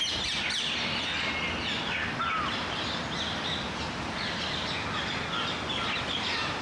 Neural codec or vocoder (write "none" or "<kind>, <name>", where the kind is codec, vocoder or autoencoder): none